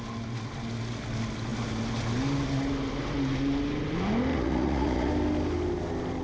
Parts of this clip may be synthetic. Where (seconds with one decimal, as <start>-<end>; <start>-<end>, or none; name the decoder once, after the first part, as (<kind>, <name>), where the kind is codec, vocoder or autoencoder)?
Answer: 4.3-5.1 (vocoder, Vocos)